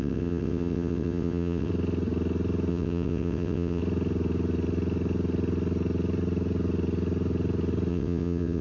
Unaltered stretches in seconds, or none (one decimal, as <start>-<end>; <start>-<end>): 1.7-2.7; 3.8-7.9